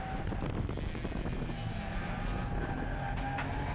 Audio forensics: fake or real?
real